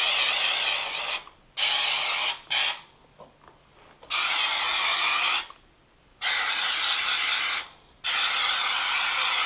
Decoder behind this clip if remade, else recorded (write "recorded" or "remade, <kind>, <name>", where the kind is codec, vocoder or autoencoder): recorded